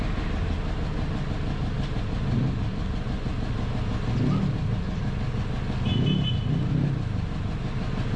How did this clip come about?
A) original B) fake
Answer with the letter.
A